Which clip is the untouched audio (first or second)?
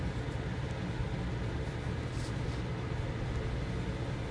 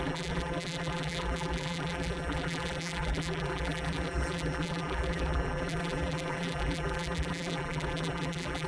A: first